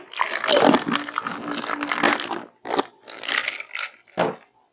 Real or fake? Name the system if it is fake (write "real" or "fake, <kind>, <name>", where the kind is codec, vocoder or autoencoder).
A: real